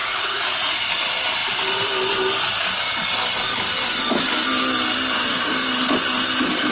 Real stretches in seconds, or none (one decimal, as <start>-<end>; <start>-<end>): 0.9-6.7